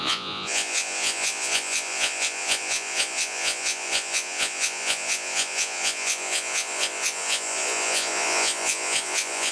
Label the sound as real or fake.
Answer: fake